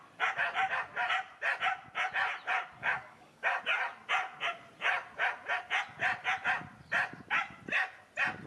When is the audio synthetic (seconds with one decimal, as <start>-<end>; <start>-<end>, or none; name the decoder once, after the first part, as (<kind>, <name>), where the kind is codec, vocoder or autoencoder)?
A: 2.8-3.6 (codec, DAC)